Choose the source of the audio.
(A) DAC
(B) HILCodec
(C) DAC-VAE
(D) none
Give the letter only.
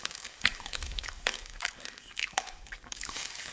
A